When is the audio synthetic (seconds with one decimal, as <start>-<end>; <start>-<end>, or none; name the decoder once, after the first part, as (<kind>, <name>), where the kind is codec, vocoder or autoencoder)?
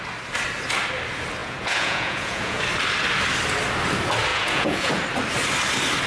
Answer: 1.4-2.6 (vocoder, Vocos); 4.3-4.9